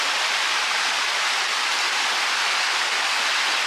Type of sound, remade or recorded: recorded